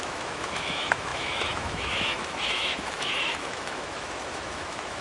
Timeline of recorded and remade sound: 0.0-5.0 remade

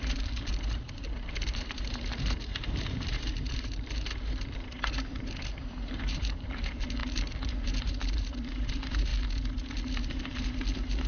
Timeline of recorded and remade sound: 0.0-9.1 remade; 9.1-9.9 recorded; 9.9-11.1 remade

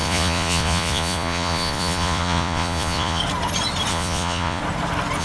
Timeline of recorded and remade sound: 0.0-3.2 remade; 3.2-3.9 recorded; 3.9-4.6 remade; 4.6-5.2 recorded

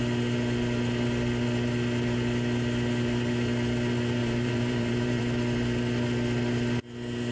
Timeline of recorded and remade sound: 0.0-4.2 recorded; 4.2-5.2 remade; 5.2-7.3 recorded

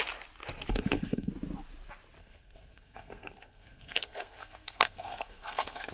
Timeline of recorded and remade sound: 0.0-0.7 recorded; 0.7-1.3 remade; 1.3-2.2 recorded; 2.2-5.9 remade